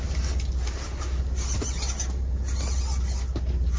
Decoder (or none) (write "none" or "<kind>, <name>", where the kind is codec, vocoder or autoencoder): none